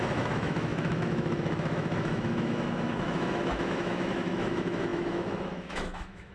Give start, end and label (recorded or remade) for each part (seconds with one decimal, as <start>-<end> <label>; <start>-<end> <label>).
0.0-6.3 remade